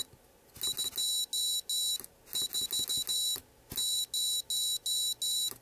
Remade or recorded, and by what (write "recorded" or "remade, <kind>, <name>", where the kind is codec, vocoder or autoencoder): recorded